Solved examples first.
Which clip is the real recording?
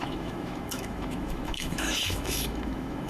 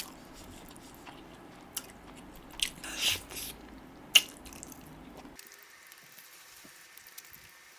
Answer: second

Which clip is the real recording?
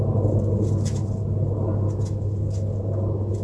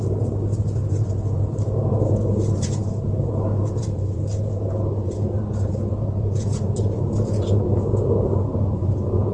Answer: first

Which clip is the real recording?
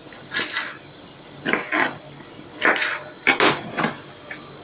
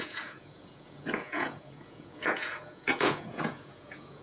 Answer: first